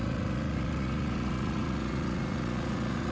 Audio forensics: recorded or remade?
remade